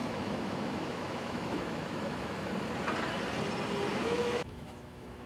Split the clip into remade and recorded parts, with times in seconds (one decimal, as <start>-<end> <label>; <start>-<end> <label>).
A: 0.0-2.5 remade; 2.5-3.9 recorded; 3.9-5.3 remade